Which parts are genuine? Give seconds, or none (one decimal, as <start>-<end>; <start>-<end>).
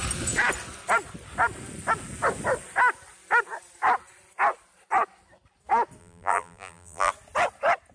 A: 0.0-6.0; 7.1-7.9